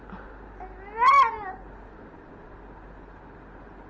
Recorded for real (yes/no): yes